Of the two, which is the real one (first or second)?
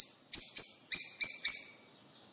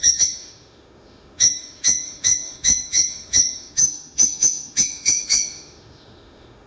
first